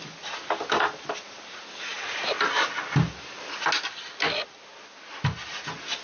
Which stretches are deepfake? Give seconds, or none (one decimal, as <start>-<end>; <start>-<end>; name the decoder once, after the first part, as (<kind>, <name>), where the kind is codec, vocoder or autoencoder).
none